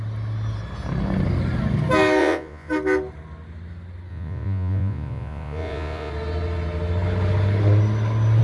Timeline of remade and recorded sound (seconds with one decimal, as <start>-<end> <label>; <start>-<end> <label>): 0.0-2.2 recorded; 2.2-2.7 remade; 2.7-4.1 recorded; 4.1-6.1 remade; 6.1-8.4 recorded